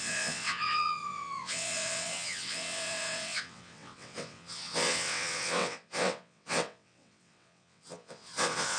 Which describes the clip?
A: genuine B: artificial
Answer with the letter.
B